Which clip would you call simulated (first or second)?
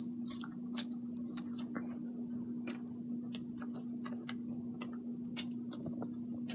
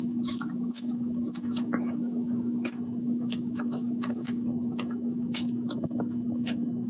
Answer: second